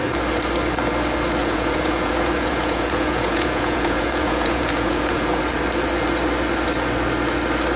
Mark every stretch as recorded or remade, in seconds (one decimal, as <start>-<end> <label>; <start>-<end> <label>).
0.0-1.4 recorded; 1.4-5.4 remade; 5.4-7.8 recorded